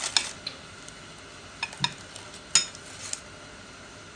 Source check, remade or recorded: recorded